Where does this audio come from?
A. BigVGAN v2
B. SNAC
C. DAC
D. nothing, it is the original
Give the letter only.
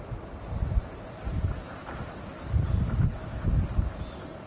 A